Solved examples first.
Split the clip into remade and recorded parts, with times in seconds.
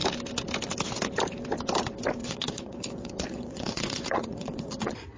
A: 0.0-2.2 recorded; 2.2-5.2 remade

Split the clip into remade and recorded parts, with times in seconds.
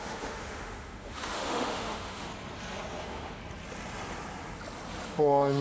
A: 0.0-2.3 remade; 2.3-3.0 recorded; 3.0-3.4 remade; 3.4-5.1 recorded; 5.1-5.6 remade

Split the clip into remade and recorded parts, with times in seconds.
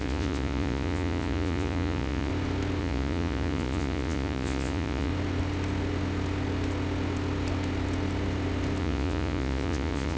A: 0.0-2.3 remade; 2.3-2.8 recorded; 2.8-5.1 remade; 5.1-8.8 recorded; 8.8-10.2 remade